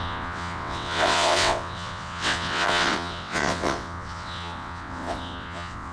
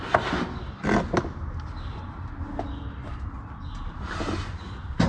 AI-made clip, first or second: first